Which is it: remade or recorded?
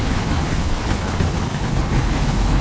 remade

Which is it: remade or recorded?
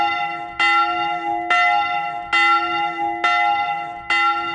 recorded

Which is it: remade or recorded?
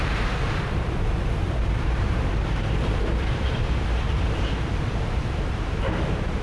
remade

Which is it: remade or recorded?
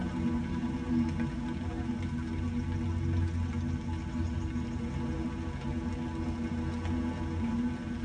recorded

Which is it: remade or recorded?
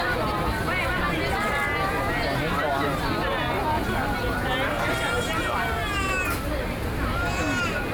recorded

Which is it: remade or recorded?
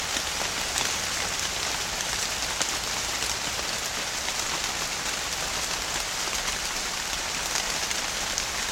recorded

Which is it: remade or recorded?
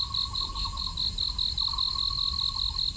recorded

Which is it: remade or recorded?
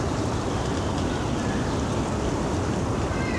recorded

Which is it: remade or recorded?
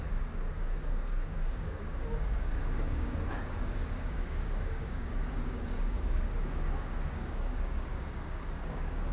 remade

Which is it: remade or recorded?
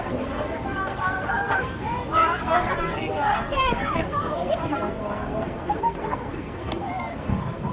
remade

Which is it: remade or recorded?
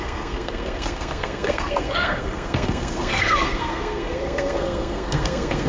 remade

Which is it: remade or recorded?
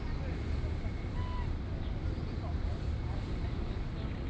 recorded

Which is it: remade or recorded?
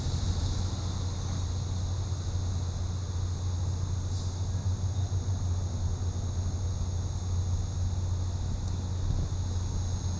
recorded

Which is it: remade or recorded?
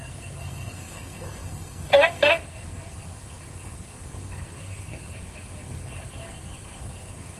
remade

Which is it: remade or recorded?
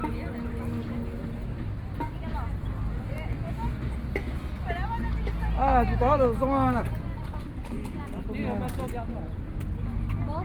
recorded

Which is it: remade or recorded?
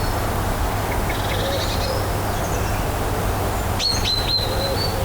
recorded